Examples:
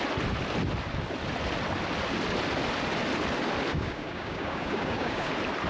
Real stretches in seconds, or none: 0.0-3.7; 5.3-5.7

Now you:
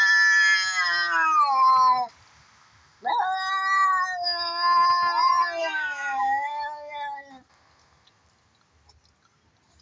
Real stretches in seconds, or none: 0.0-5.6; 6.9-9.8